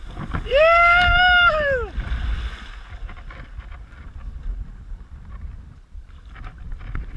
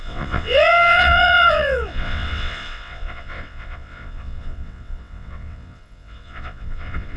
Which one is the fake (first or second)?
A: second